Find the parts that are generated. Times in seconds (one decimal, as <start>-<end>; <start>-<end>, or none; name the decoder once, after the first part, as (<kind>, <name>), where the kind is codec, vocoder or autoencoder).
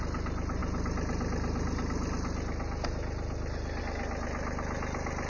none